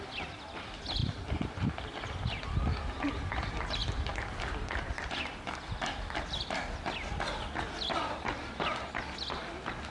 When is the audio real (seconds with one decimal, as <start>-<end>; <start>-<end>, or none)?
0.0-1.0; 1.8-3.8; 5.9-9.9